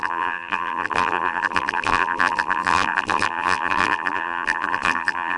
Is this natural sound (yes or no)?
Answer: no